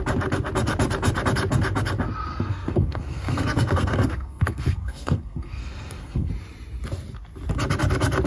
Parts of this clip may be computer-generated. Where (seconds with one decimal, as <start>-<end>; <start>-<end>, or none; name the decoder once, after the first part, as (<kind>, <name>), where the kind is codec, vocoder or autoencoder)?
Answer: 2.3-6.3 (codec, SNAC)